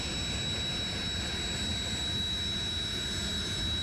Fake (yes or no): no